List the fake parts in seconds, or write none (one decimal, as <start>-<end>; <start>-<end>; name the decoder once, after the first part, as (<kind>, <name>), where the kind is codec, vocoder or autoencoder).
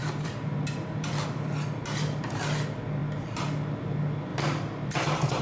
0.0-1.1 (vocoder, BigVGAN v2); 4.3-5.4